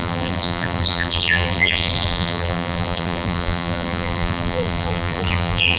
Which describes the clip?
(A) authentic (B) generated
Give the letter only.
B